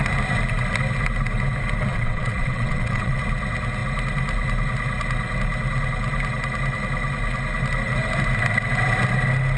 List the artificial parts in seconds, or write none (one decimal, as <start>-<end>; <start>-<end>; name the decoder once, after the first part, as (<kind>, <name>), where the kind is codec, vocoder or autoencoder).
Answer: 1.9-3.2 (vocoder, WaveNeXt)